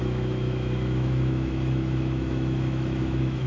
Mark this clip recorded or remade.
remade